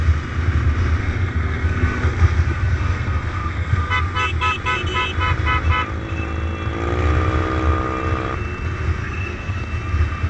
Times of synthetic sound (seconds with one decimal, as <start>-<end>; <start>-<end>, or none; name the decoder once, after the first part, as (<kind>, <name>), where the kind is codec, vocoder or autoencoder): 1.0-3.9 (codec, SNAC); 9.0-9.6